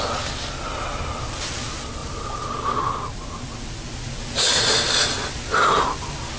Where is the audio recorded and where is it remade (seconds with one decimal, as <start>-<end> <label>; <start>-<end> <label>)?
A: 0.0-6.4 recorded